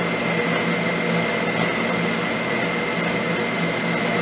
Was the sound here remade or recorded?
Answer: recorded